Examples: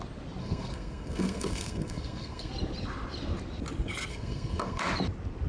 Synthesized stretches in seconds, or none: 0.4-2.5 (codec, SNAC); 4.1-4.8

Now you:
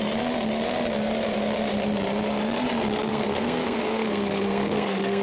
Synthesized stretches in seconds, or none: 3.1-5.2 (codec, SNAC)

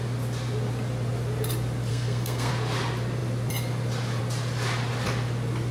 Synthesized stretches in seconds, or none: 1.9-2.5 (codec, SNAC)

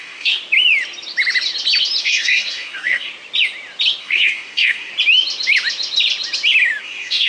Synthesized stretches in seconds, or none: 0.0-0.4 (codec, SNAC); 2.0-3.1; 4.0-4.9; 6.8-7.3

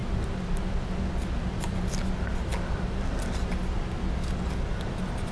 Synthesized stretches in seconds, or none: none

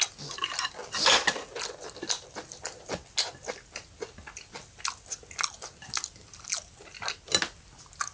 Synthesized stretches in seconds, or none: none